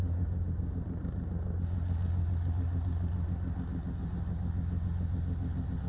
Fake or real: real